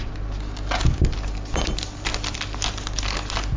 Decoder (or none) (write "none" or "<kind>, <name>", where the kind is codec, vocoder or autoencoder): none